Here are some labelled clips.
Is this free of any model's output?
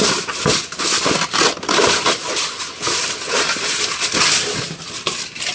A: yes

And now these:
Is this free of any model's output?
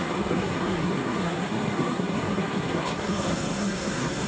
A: no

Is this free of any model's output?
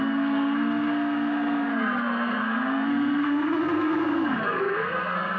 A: no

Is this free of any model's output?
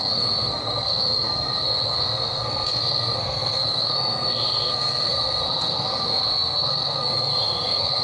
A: no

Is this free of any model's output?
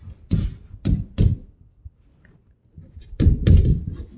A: yes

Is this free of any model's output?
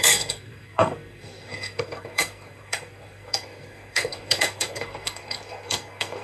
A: no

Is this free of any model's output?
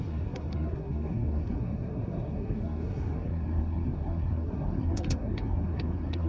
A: no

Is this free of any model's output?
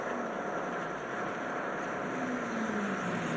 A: yes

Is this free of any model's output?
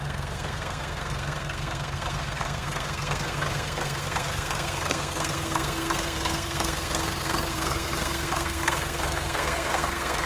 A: no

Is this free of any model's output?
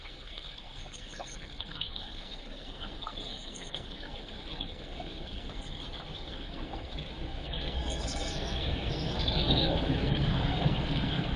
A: no